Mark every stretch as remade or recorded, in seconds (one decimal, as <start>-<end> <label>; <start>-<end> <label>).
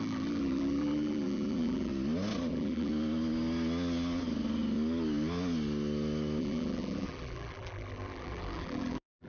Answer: 0.0-1.9 remade; 1.9-2.5 recorded; 2.5-2.9 remade; 2.9-6.4 recorded; 6.4-9.3 remade